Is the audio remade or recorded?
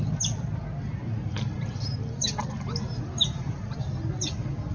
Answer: recorded